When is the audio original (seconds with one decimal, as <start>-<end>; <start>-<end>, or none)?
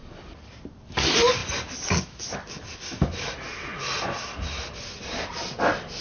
0.0-6.0